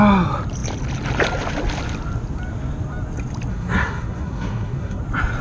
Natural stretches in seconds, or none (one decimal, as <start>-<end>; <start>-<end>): 0.0-3.5; 5.0-5.4